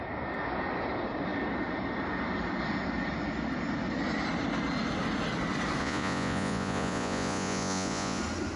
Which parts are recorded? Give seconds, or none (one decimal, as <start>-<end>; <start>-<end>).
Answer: 0.0-5.8; 8.2-8.6